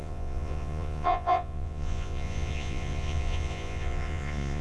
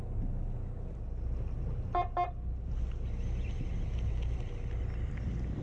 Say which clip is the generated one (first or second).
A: first